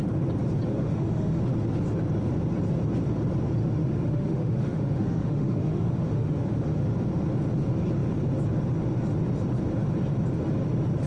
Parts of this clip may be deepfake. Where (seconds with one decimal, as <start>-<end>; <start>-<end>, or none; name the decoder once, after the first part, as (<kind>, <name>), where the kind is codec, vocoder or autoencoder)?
0.7-1.4 (autoencoder, DAC-VAE); 3.6-6.8